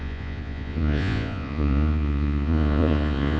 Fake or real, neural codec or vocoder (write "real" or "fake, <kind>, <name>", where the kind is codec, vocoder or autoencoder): fake, vocoder, Vocos